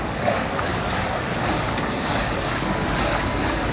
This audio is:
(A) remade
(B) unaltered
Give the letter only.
A